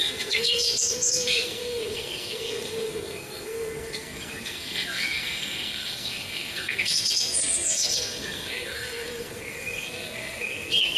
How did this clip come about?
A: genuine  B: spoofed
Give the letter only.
B